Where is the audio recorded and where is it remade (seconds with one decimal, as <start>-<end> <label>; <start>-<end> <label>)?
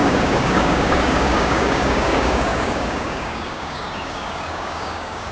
0.0-5.3 remade